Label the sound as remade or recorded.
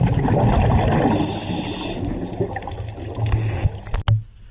recorded